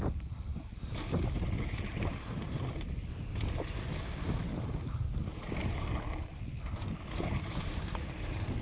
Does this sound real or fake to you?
real